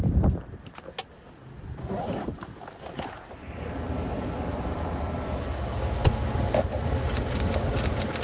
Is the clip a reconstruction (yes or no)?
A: no